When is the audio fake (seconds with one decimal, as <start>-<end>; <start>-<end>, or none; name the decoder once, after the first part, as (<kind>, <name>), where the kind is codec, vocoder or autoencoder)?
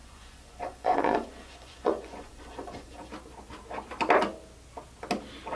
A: 0.0-3.1 (vocoder, Vocos)